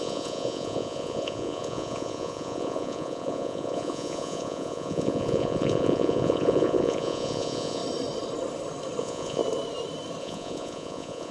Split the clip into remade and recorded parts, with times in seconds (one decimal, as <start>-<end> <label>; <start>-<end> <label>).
0.0-7.8 remade; 7.8-9.0 recorded; 9.0-9.4 remade; 9.4-10.2 recorded; 10.2-11.3 remade